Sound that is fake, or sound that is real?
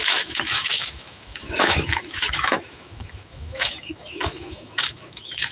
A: fake